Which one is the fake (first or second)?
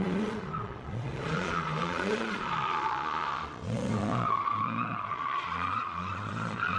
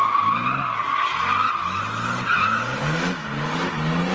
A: first